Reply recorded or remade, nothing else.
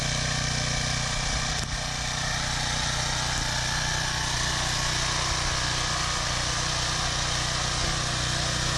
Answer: recorded